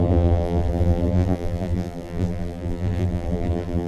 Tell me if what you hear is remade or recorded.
remade